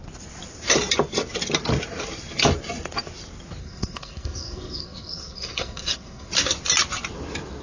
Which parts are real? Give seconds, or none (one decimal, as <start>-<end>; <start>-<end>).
0.0-3.6; 6.3-7.6